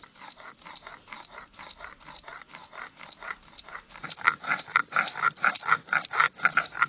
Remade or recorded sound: recorded